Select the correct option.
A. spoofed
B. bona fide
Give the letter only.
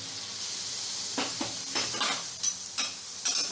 B